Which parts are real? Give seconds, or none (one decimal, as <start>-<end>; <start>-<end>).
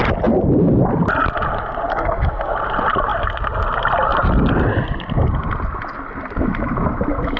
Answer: 0.0-1.9; 2.5-7.4